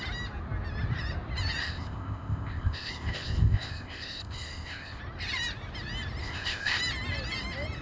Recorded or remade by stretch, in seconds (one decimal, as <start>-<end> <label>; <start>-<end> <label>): 0.0-1.6 recorded; 1.6-5.0 remade; 5.0-6.2 recorded; 6.2-6.8 remade; 6.8-7.8 recorded